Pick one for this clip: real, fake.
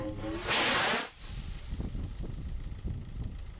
real